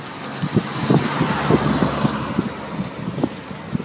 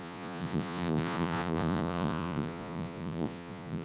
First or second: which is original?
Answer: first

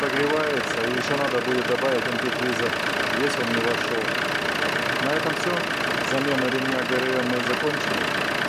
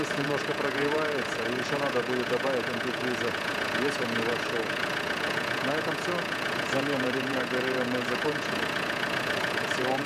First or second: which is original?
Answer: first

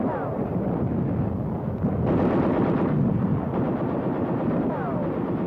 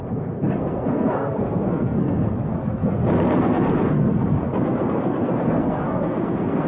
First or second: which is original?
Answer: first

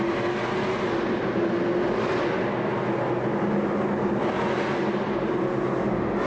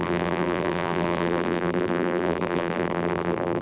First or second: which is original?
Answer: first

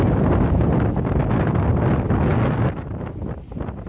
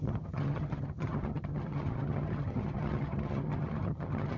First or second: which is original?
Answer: first